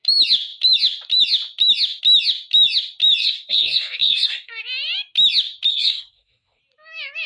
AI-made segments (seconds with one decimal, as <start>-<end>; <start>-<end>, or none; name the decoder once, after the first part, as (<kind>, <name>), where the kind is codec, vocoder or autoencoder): 3.2-4.5 (codec, SNAC); 5.7-6.6